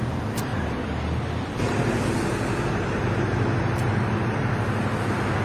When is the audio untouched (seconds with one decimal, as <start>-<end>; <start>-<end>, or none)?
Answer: 0.0-5.4